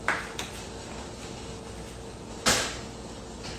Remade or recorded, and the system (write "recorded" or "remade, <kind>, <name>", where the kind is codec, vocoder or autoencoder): recorded